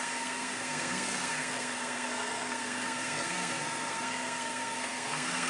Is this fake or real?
fake